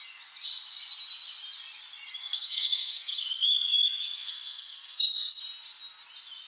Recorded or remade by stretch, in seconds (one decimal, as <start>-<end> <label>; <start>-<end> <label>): 0.0-2.2 recorded; 2.2-5.4 remade; 5.4-6.5 recorded